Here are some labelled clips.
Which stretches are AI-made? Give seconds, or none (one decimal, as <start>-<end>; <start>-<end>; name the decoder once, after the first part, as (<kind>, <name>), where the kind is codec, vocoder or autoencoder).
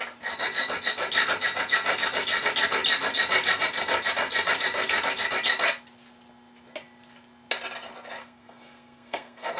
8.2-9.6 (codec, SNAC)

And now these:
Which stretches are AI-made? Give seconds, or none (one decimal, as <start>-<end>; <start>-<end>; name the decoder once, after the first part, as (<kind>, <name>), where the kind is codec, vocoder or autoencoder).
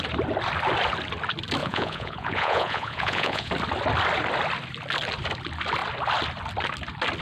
1.6-3.5 (vocoder, Vocos)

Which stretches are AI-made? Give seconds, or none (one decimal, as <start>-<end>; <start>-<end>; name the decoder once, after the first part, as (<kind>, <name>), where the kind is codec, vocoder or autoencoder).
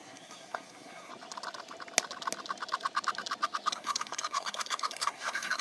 0.0-1.1 (codec, SNAC); 3.7-5.6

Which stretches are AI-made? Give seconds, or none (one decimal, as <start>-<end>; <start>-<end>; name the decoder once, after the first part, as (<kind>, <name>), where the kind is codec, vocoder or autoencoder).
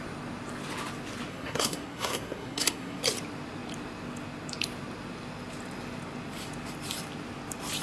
1.3-3.0 (codec, SNAC)